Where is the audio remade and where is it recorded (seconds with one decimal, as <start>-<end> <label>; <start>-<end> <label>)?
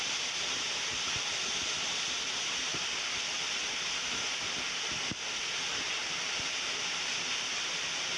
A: 0.0-8.2 recorded